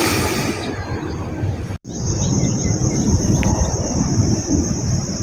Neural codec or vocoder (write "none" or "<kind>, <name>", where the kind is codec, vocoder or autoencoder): vocoder, BigVGAN v2